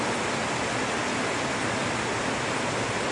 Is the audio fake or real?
real